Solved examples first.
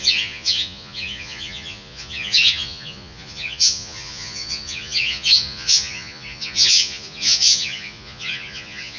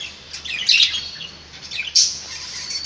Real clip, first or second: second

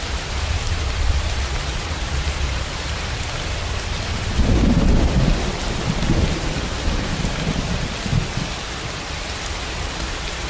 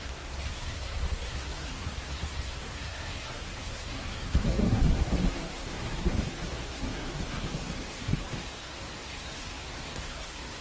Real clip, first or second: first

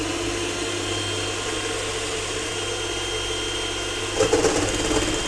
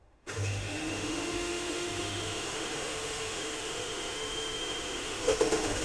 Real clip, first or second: first